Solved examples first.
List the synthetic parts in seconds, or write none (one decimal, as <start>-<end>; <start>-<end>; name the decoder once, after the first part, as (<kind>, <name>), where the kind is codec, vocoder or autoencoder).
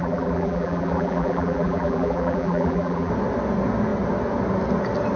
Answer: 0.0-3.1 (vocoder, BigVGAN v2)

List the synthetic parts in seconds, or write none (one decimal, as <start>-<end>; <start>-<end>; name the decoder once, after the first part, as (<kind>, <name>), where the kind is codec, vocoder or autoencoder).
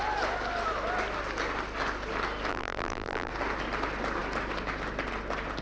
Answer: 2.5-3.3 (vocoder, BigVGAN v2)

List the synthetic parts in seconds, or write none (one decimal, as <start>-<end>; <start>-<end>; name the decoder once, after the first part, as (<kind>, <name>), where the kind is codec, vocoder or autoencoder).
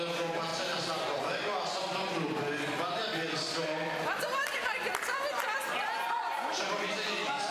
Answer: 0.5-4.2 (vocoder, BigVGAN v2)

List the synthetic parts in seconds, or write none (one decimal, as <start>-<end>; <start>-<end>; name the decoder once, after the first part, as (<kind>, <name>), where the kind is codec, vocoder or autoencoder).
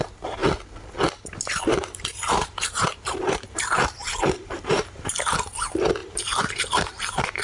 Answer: 0.0-0.4 (vocoder, BigVGAN v2); 1.3-7.4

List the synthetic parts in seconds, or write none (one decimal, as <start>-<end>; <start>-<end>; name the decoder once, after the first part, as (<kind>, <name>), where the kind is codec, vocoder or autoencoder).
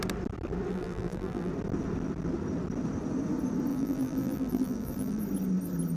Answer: 0.7-1.5 (vocoder, BigVGAN v2); 3.7-5.2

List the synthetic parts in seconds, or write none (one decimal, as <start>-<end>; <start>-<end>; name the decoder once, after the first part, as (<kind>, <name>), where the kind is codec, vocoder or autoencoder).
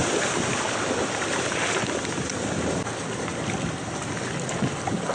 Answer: 3.3-4.3 (vocoder, BigVGAN v2)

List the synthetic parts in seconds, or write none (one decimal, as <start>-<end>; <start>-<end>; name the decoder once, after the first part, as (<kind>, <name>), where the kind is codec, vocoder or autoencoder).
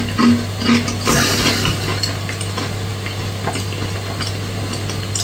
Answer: none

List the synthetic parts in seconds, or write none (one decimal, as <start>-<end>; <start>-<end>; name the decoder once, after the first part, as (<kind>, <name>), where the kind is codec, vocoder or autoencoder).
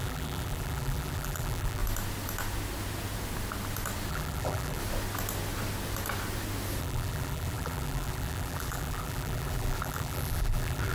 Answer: 0.0-1.8 (vocoder, BigVGAN v2); 4.1-4.8; 6.8-10.9